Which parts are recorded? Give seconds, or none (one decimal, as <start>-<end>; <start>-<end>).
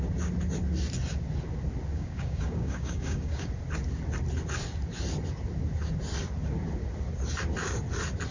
0.0-1.9; 3.5-8.3